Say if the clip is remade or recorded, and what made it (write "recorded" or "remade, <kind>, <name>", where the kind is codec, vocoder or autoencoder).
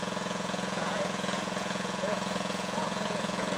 remade, vocoder, Vocos